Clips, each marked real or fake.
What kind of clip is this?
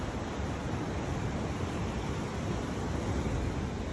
real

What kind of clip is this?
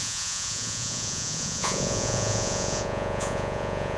fake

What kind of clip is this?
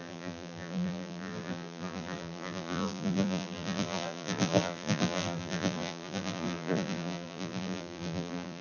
fake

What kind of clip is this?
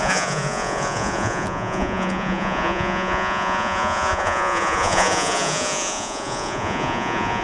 fake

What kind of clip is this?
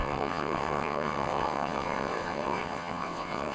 fake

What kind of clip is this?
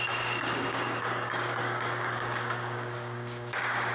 fake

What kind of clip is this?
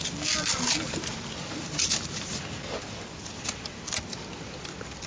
real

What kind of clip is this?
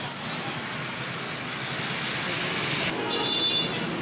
real